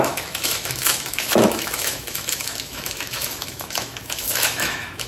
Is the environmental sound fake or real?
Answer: fake